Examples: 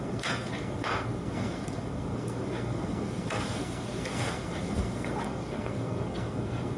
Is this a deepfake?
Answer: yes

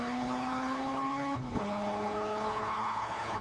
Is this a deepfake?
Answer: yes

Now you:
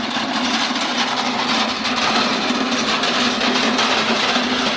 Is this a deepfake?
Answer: no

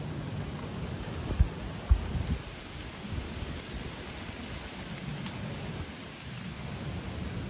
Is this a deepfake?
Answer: no